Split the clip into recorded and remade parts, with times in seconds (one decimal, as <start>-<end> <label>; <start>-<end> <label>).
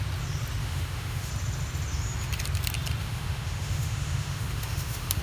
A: 0.0-0.6 recorded; 0.6-1.3 remade; 1.3-3.0 recorded; 3.0-5.2 remade